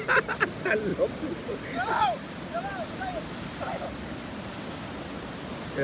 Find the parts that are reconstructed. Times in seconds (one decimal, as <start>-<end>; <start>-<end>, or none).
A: none